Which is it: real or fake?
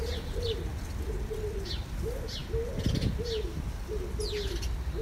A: real